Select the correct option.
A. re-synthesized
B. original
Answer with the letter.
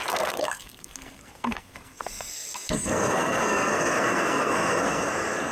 A